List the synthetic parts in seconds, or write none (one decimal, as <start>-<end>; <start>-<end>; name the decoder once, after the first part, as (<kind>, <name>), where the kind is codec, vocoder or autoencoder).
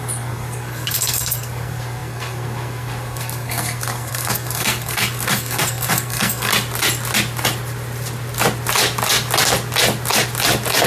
0.0-6.5 (codec, SNAC)